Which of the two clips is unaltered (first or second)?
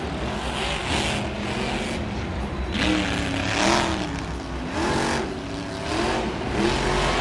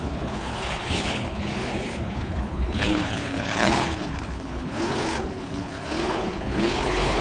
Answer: first